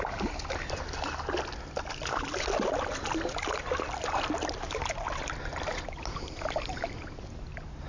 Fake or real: real